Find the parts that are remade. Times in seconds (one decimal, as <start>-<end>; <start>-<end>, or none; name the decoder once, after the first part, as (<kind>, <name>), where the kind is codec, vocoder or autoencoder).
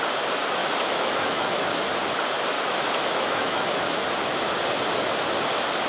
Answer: 0.6-1.8 (autoencoder, DAC-VAE); 3.1-4.0